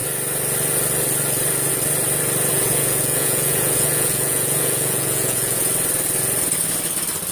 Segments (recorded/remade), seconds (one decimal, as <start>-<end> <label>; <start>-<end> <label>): 0.0-2.5 recorded; 2.5-5.7 remade; 5.7-7.3 recorded